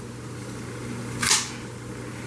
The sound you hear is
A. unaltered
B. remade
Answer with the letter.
A